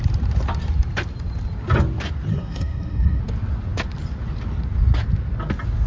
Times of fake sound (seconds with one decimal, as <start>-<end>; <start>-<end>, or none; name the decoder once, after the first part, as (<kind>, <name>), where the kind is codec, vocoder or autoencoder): 2.3-3.2 (codec, SNAC)